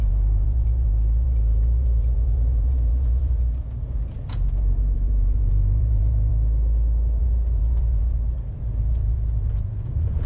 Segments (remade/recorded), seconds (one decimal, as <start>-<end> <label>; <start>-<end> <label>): 0.0-6.3 remade; 6.3-7.2 recorded; 7.2-10.3 remade